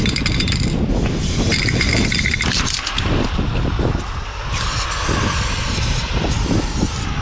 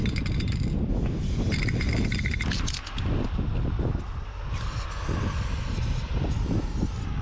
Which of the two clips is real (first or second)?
second